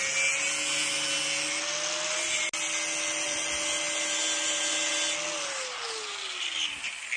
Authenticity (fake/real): real